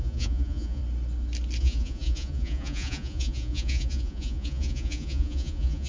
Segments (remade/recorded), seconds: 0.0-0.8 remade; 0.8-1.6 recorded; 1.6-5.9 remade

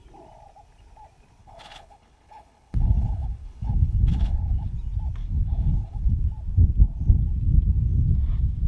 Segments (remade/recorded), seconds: 0.0-1.4 recorded; 1.4-4.7 remade; 4.7-5.2 recorded; 5.2-6.2 remade; 6.2-8.7 recorded

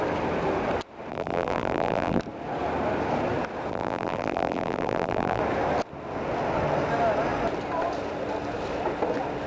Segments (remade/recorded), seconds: 0.0-1.1 recorded; 1.1-2.2 remade; 2.2-3.7 recorded; 3.7-5.4 remade; 5.4-9.5 recorded

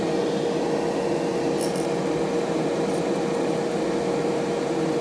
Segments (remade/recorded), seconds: 0.0-5.0 recorded

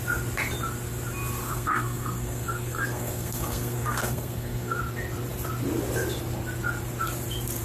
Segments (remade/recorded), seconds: 0.0-1.4 recorded; 1.4-4.8 remade; 4.8-7.6 recorded

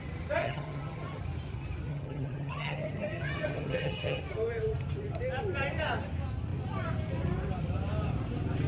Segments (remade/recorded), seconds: 0.0-0.4 recorded; 0.4-1.2 remade; 1.2-1.9 recorded; 1.9-4.2 remade; 4.2-8.7 recorded